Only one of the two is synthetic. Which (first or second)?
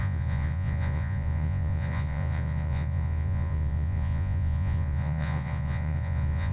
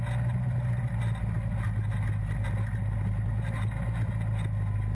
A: first